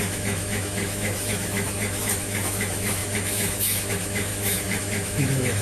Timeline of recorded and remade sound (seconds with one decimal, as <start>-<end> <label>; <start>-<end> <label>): 0.0-5.6 remade